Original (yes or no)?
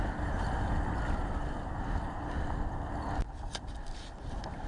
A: yes